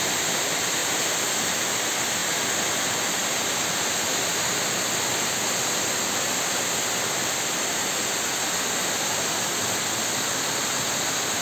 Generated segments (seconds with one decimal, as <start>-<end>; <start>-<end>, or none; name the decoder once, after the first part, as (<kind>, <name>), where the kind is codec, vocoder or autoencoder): 0.8-1.3 (vocoder, BigVGAN v2)